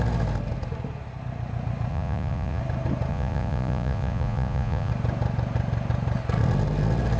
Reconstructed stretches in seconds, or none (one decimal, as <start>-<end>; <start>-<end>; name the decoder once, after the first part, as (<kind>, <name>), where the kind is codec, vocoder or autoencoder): 1.9-2.6 (vocoder, Vocos); 3.1-4.9